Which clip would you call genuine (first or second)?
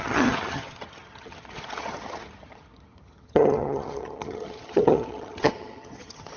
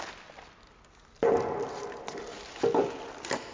second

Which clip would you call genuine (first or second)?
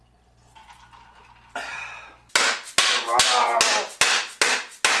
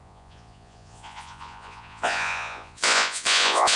first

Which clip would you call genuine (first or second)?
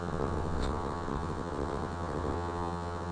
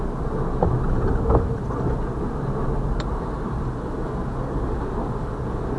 second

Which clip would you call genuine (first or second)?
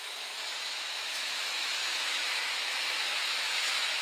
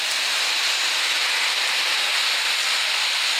second